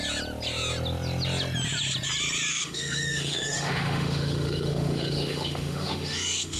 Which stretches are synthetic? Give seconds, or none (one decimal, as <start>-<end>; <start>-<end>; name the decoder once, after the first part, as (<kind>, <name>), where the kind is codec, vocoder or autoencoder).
2.5-6.6 (autoencoder, DAC-VAE)